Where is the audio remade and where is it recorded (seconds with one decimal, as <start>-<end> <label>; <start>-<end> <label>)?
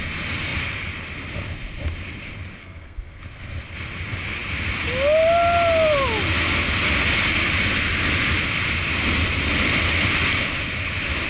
0.0-2.6 recorded; 2.6-3.2 remade; 3.2-11.3 recorded